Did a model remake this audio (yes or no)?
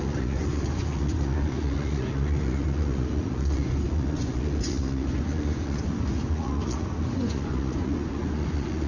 yes